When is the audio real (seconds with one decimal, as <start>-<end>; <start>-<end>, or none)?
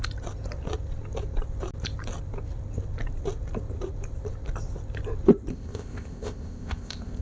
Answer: 0.0-5.5